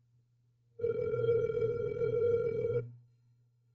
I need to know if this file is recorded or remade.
remade